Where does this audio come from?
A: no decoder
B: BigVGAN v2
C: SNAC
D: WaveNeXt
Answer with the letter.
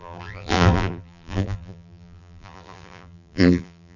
B